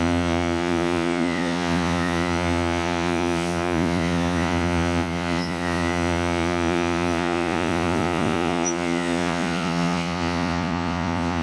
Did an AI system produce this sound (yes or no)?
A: yes